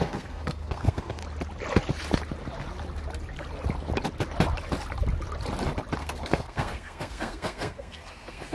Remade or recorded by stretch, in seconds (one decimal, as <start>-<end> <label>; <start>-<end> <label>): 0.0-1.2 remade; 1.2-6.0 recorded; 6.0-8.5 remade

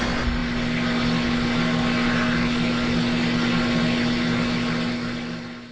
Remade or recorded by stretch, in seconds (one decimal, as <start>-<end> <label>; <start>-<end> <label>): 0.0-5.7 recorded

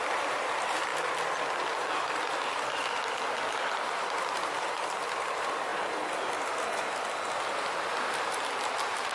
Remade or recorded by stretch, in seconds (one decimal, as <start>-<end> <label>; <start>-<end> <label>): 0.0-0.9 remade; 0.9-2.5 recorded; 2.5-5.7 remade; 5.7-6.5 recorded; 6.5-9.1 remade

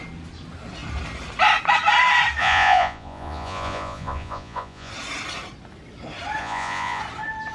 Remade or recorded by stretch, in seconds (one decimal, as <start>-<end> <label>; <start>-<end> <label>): 0.0-2.4 recorded; 2.4-4.9 remade; 4.9-6.4 recorded; 6.4-7.0 remade; 7.0-7.5 recorded